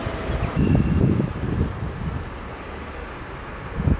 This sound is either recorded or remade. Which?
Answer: recorded